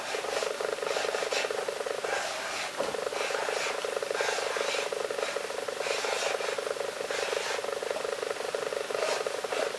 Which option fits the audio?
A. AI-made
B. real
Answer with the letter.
B